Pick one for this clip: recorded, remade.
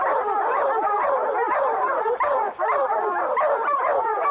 remade